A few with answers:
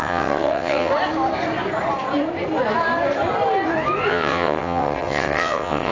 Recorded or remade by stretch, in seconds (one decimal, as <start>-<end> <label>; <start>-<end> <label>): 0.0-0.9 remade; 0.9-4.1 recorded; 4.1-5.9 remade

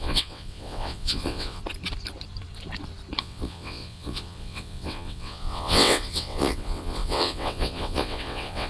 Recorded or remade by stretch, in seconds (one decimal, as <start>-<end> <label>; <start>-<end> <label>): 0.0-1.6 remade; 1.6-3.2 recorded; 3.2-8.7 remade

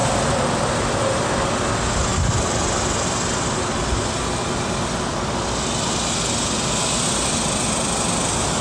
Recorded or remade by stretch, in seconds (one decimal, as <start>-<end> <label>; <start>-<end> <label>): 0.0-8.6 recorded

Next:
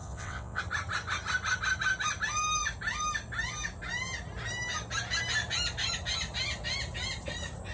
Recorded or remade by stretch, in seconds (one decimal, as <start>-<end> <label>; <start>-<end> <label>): 0.0-0.6 remade; 0.6-7.7 recorded